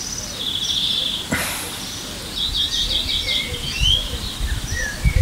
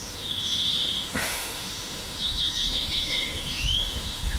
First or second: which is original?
first